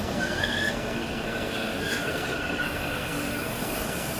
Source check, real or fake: fake